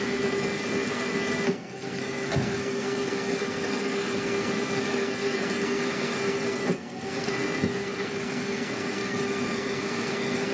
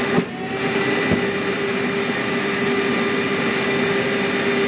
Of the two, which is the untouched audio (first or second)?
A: second